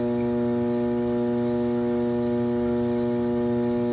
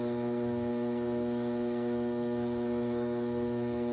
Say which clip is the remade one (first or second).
second